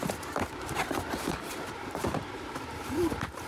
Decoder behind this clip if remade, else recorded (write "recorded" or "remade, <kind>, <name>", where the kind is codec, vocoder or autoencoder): remade, vocoder, BigVGAN v2